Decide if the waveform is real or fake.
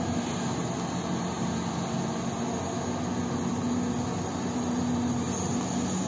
real